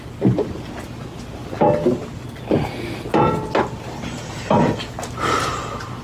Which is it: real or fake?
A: real